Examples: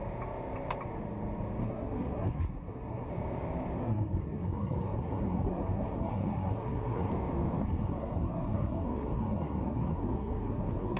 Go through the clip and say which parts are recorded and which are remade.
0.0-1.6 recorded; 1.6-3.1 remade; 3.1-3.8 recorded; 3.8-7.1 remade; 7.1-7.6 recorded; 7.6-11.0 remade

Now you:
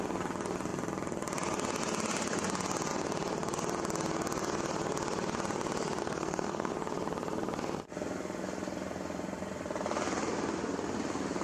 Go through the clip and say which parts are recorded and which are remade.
0.0-6.0 recorded; 6.0-6.7 remade; 6.7-11.4 recorded

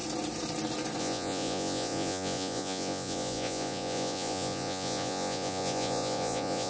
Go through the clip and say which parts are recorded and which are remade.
0.0-1.0 recorded; 1.0-6.7 remade

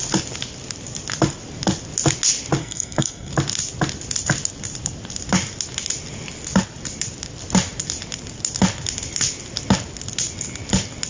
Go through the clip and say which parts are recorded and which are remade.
0.0-2.6 recorded; 2.6-3.3 remade; 3.3-11.1 recorded